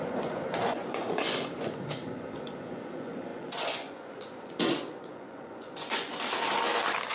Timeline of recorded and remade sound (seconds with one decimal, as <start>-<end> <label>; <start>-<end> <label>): 0.0-6.1 remade; 6.1-7.1 recorded